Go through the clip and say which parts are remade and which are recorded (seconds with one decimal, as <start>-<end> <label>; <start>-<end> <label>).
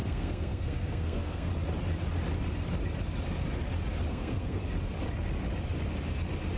0.0-1.5 remade; 1.5-4.1 recorded; 4.1-4.6 remade; 4.6-6.6 recorded